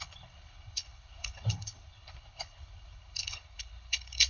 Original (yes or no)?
no